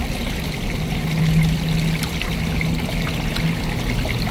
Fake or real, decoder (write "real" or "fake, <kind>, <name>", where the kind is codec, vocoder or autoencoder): real